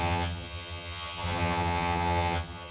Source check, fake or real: fake